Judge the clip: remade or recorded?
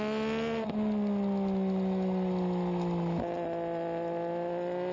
recorded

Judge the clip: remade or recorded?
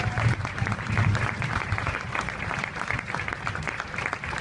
remade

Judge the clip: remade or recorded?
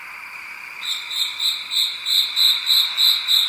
remade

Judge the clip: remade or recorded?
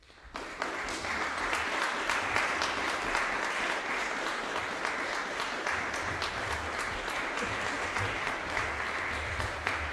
recorded